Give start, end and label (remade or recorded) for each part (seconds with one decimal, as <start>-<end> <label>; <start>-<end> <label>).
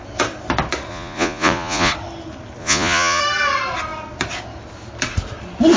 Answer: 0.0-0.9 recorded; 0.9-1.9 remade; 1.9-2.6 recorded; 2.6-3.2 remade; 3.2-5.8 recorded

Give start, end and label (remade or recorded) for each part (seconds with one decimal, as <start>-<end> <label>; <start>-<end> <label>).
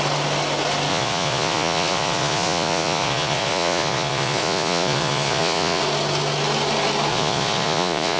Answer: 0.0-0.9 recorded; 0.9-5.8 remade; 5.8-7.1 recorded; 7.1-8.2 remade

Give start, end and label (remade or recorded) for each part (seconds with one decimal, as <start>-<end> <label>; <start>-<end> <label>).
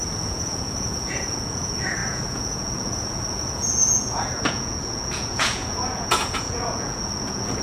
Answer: 0.0-7.6 remade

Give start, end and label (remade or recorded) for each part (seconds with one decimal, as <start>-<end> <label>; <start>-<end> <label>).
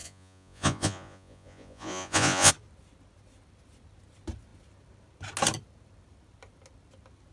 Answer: 0.0-2.5 remade; 2.5-7.3 recorded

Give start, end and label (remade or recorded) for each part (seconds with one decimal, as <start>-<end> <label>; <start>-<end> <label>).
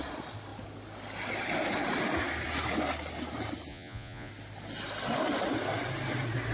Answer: 0.0-3.7 recorded; 3.7-4.3 remade; 4.3-6.5 recorded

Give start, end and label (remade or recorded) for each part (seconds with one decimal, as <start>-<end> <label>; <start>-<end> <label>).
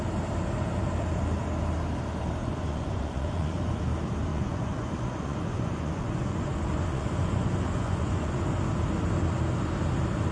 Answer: 0.0-2.4 recorded; 2.4-3.8 remade; 3.8-4.3 recorded; 4.3-8.5 remade; 8.5-10.3 recorded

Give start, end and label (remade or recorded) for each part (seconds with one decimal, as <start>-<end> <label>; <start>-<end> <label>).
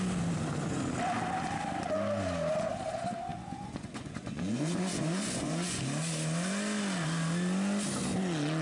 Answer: 0.0-3.3 recorded; 3.3-5.8 remade; 5.8-8.6 recorded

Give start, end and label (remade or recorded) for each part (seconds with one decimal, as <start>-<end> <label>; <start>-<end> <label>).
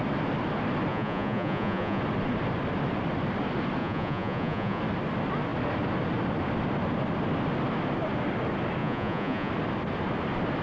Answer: 0.0-0.9 recorded; 0.9-2.0 remade; 2.0-3.8 recorded; 3.8-4.8 remade; 4.8-8.8 recorded; 8.8-9.5 remade; 9.5-10.6 recorded